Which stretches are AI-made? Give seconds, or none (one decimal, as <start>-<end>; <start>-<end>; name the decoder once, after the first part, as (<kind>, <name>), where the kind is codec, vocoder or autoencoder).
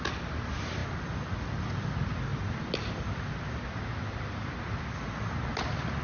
none